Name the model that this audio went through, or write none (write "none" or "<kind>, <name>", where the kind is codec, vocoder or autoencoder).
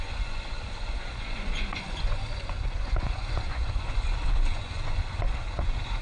vocoder, Vocos